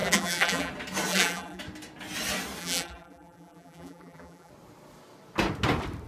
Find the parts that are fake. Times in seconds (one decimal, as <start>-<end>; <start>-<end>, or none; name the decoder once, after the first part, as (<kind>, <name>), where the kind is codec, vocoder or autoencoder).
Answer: 0.0-0.7 (vocoder, BigVGAN v2); 1.1-1.6; 2.6-4.5